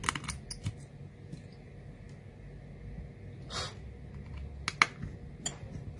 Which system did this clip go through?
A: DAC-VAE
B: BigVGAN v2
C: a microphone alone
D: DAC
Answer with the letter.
C